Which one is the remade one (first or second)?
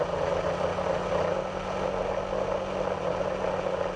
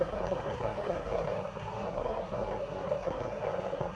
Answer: second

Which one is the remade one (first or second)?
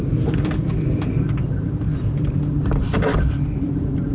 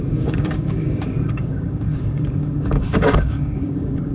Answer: second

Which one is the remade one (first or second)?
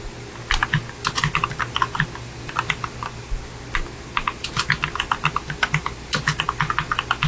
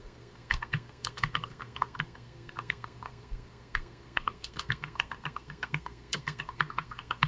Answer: second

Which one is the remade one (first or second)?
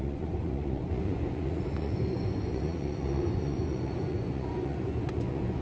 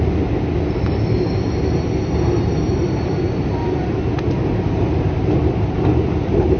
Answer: first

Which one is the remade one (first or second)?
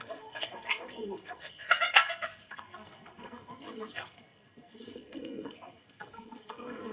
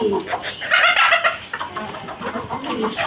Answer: first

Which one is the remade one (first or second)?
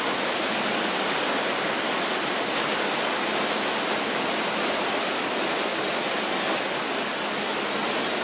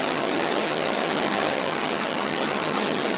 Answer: second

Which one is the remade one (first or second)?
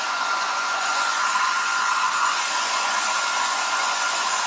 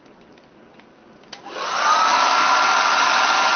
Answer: first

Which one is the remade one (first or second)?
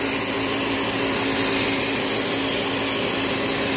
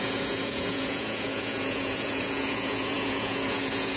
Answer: second